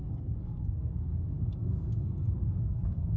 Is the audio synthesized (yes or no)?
yes